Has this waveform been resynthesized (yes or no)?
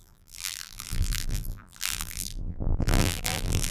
yes